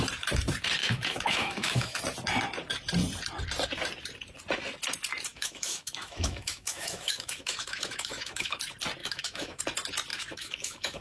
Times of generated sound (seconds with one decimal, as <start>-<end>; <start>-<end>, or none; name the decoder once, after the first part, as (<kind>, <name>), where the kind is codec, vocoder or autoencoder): 0.8-2.0 (autoencoder, DAC-VAE); 5.3-8.6; 9.0-9.6; 10.1-11.0